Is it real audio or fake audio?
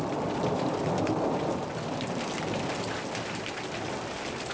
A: real